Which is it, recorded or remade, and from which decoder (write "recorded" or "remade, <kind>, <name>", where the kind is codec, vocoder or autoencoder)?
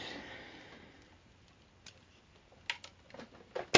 recorded